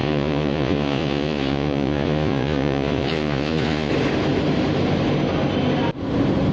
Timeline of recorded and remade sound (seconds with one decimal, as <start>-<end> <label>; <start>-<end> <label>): 0.0-3.9 remade; 3.9-6.5 recorded

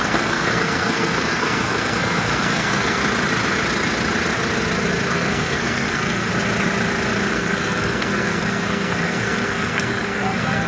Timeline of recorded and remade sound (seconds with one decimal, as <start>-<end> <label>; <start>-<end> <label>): 0.0-3.0 remade; 3.0-5.1 recorded; 5.1-6.3 remade; 6.3-7.3 recorded; 7.3-10.7 remade

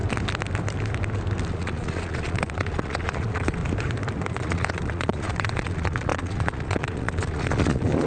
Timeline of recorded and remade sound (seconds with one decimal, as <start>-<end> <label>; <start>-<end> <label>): 0.0-1.5 recorded; 1.5-3.6 remade; 3.6-4.3 recorded; 4.3-8.1 remade

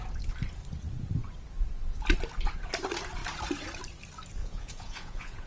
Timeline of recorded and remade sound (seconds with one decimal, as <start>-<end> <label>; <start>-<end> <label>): 0.0-4.4 recorded; 4.4-5.5 remade

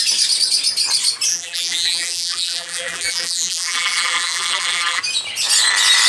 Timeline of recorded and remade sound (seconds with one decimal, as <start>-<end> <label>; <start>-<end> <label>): 0.0-1.3 recorded; 1.3-5.0 remade; 5.0-6.1 recorded